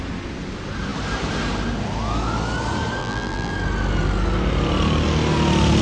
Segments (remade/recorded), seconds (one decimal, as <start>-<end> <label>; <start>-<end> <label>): 0.0-3.0 recorded; 3.0-3.5 remade; 3.5-5.8 recorded